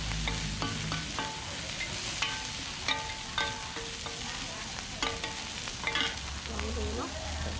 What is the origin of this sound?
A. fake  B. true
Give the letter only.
B